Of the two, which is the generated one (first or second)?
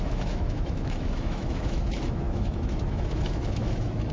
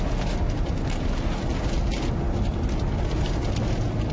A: first